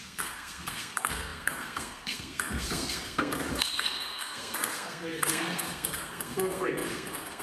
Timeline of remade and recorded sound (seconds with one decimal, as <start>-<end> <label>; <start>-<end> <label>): 0.0-7.4 remade